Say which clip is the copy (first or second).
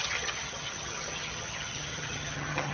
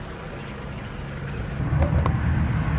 first